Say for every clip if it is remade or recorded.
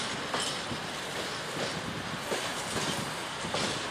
recorded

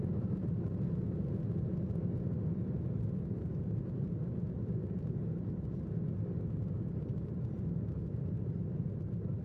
recorded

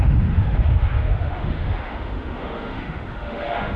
remade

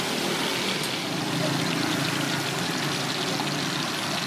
recorded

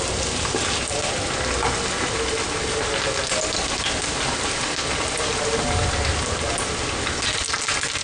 recorded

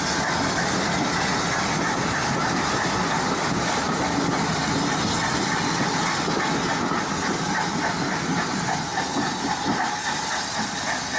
recorded